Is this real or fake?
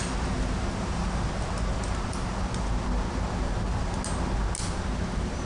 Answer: real